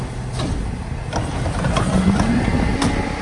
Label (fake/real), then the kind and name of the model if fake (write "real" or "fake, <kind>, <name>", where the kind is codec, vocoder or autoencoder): real